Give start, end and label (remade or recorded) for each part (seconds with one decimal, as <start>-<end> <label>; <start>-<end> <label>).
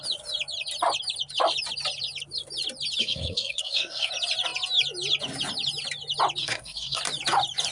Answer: 0.0-3.0 recorded; 3.0-4.1 remade; 4.1-6.4 recorded; 6.4-7.0 remade; 7.0-7.7 recorded